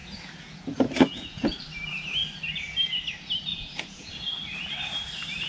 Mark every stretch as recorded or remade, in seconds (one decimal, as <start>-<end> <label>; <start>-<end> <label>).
0.0-1.6 remade; 1.6-3.5 recorded; 3.5-4.1 remade; 4.1-5.5 recorded